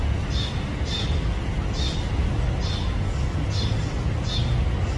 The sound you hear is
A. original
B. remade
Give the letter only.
A